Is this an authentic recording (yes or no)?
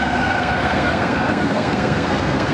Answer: no